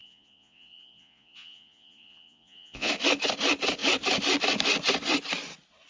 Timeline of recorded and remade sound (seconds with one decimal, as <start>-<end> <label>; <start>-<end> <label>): 0.0-2.9 remade; 2.9-5.9 recorded